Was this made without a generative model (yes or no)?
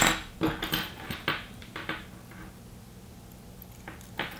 yes